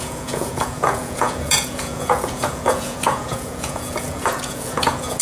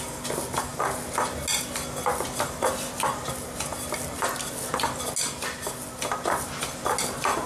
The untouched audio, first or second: second